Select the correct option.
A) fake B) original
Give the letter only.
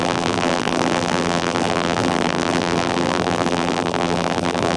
A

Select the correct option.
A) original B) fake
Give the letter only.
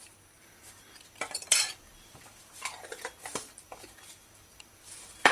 B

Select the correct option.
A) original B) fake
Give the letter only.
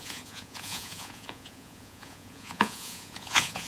B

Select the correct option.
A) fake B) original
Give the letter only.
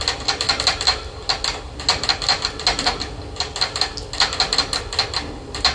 B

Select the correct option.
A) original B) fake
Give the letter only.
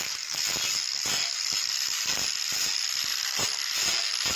A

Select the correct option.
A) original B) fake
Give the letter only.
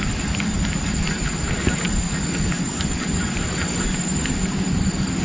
A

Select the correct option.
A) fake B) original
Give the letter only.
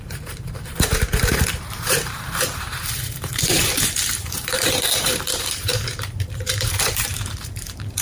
A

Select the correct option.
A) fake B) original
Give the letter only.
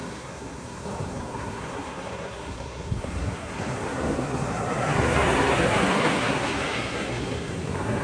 A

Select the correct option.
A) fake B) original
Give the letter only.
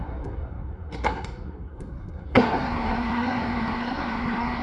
A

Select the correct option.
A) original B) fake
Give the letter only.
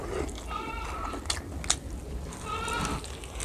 A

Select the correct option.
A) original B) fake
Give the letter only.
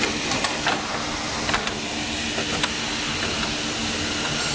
A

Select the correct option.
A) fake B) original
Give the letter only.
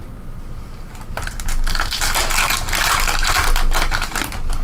B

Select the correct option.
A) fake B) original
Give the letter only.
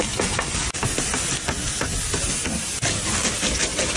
B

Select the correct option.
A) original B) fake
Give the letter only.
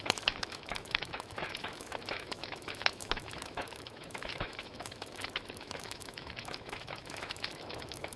B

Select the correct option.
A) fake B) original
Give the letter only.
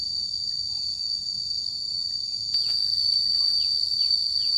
B